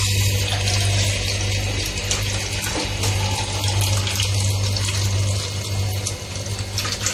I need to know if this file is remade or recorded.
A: recorded